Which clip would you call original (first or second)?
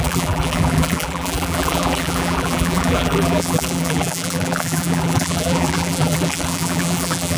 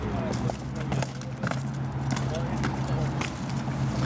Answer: second